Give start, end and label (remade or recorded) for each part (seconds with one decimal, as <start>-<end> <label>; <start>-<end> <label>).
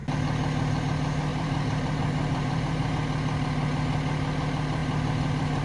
0.0-1.3 recorded; 1.3-2.9 remade; 2.9-5.6 recorded